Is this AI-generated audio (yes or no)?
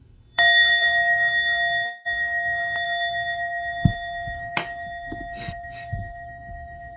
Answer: yes